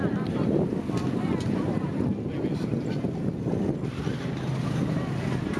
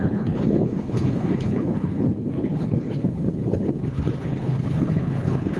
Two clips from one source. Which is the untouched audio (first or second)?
first